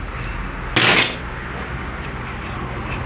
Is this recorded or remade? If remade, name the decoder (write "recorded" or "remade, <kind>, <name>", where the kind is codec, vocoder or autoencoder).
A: recorded